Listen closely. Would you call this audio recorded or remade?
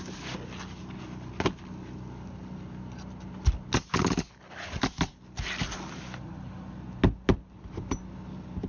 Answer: recorded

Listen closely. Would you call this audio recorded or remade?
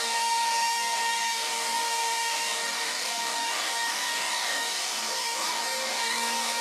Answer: remade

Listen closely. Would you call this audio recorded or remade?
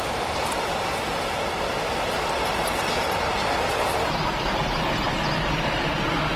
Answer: recorded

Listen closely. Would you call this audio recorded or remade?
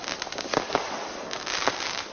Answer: recorded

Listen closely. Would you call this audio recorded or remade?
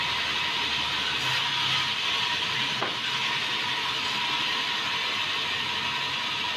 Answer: recorded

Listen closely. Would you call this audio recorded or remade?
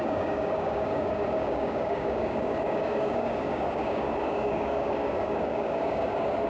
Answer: remade